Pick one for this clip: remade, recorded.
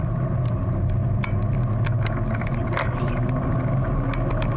recorded